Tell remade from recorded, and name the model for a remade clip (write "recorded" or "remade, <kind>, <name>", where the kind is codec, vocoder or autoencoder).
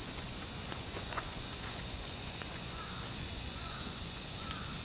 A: remade, vocoder, Vocos